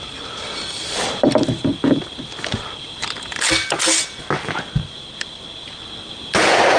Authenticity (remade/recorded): recorded